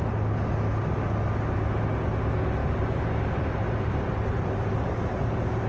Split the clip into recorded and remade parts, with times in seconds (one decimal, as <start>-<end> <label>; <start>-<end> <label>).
0.0-2.6 recorded; 2.6-5.7 remade